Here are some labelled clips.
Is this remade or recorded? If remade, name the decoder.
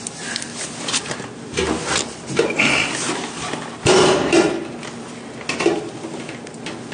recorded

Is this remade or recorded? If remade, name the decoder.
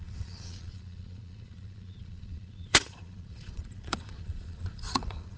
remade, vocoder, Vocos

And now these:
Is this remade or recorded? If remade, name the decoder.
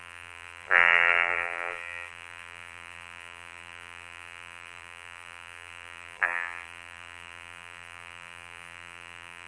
remade, vocoder, BigVGAN v2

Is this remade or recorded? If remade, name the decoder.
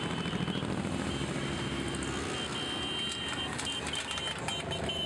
recorded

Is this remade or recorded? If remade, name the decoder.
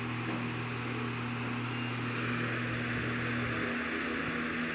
recorded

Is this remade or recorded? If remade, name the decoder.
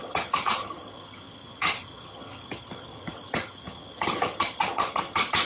remade, vocoder, HiFi-GAN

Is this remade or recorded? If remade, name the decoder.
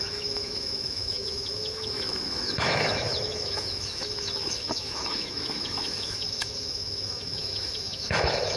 remade, autoencoder, DAC-VAE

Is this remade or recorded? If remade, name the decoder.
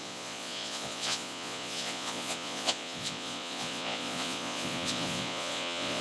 remade, vocoder, Vocos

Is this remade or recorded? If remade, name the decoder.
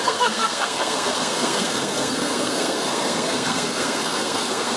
remade, codec, SNAC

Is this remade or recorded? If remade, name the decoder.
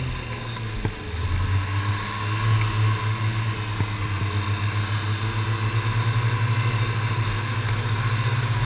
recorded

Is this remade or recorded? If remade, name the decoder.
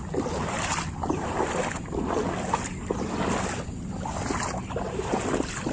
recorded